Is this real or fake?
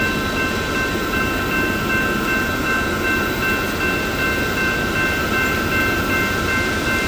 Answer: real